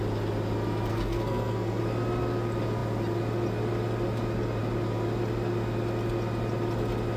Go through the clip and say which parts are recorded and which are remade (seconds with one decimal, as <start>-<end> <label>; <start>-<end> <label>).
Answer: 0.0-0.9 recorded; 0.9-1.8 remade; 1.8-7.2 recorded